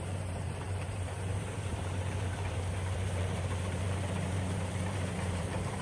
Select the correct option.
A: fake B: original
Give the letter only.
A